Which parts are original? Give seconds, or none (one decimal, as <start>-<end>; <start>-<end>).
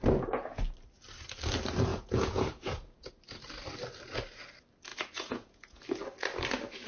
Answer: 0.0-1.9; 3.1-4.9; 5.8-6.9